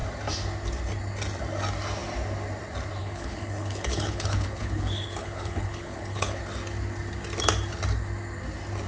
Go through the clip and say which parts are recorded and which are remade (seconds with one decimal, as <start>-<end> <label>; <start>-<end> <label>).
0.0-3.0 recorded; 3.0-6.4 remade; 6.4-8.9 recorded